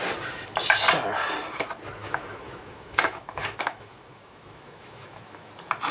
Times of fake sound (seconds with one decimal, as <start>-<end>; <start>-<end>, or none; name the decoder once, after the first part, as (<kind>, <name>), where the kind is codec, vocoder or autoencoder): 2.0-5.5 (autoencoder, DAC-VAE)